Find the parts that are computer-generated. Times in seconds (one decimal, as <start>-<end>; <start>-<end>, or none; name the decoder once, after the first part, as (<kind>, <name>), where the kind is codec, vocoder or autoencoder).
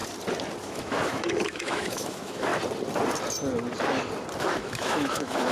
0.6-2.5 (autoencoder, DAC-VAE); 4.4-5.5